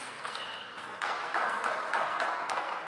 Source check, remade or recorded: remade